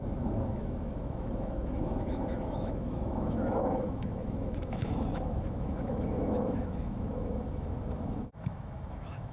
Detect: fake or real fake